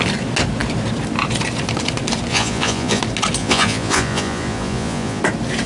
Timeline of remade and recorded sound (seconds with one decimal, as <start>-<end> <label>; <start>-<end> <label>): 0.0-2.3 recorded; 2.3-3.0 remade; 3.0-3.4 recorded; 3.4-5.2 remade; 5.2-5.7 recorded